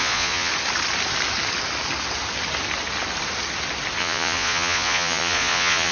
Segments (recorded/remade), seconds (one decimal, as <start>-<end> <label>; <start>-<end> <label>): 0.0-0.5 remade; 0.5-4.0 recorded; 4.0-5.9 remade